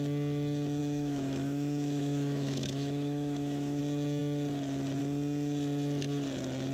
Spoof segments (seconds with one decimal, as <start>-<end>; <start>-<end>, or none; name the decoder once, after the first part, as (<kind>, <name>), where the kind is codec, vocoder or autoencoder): 0.8-3.8 (autoencoder, DAC-VAE)